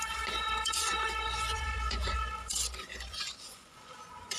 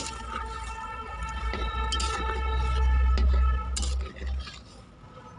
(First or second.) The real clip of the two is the second